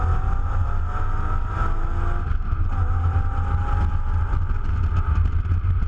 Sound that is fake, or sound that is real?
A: real